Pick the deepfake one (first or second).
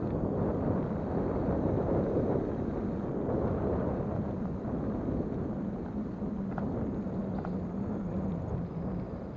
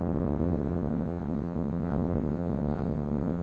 second